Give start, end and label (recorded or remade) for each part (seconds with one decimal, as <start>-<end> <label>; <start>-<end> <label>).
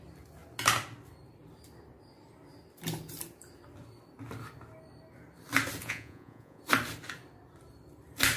0.0-5.8 recorded; 5.8-6.6 remade; 6.6-8.4 recorded